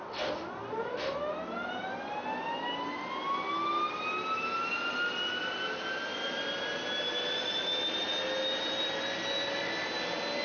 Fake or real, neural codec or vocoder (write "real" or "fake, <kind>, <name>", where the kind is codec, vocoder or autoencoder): real